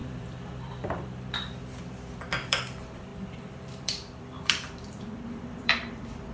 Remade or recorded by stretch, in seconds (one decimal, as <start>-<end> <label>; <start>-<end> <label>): 0.0-6.3 remade